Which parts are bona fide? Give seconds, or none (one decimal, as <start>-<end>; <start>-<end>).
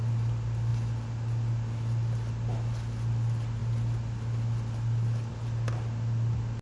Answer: 0.0-6.6